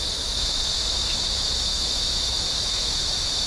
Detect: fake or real fake